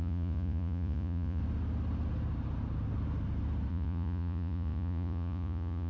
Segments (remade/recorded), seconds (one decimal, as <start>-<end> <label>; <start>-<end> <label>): 0.0-1.4 remade; 1.4-3.7 recorded; 3.7-5.9 remade